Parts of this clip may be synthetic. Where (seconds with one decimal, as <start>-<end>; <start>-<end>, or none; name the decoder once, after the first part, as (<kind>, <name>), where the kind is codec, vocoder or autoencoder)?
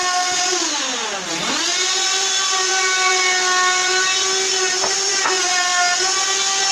1.7-3.1 (vocoder, BigVGAN v2)